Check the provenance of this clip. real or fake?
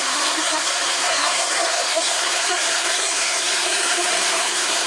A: fake